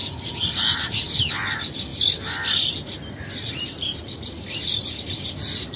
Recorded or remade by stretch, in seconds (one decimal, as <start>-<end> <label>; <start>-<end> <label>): 0.0-1.3 remade; 1.3-5.8 recorded